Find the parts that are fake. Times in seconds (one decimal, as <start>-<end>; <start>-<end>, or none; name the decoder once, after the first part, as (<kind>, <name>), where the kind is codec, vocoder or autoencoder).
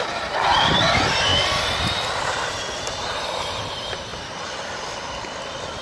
0.0-1.3 (vocoder, BigVGAN v2); 2.2-4.1